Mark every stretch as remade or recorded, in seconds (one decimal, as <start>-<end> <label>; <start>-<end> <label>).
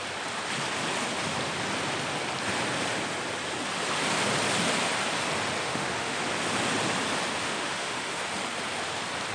0.0-5.6 recorded; 5.6-6.2 remade; 6.2-7.4 recorded; 7.4-8.2 remade; 8.2-9.3 recorded